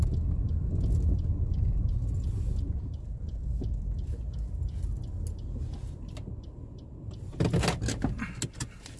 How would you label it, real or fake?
real